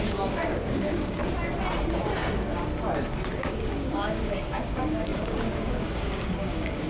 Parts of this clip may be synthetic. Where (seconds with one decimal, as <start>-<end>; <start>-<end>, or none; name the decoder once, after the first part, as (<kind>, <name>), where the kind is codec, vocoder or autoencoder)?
0.0-1.2 (codec, DAC); 3.3-6.9